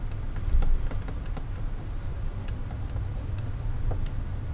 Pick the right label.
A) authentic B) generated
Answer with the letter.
B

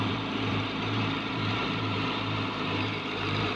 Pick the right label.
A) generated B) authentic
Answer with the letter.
A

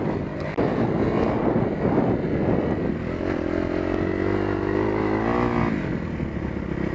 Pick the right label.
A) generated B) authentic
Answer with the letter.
B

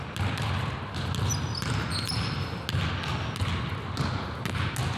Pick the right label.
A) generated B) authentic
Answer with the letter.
B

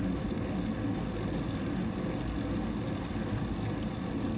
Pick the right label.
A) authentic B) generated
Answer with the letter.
A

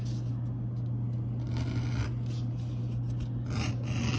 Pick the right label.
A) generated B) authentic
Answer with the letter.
B